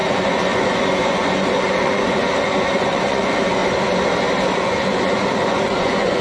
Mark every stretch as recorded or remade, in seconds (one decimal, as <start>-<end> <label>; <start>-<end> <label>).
0.0-3.6 remade; 3.6-4.5 recorded; 4.5-6.2 remade